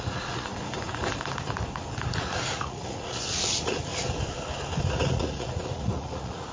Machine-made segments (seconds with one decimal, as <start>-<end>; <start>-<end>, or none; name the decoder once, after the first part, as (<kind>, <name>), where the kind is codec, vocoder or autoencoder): 0.0-0.5 (vocoder, Vocos); 2.2-3.9; 4.9-6.5